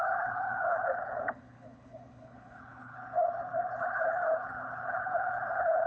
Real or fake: fake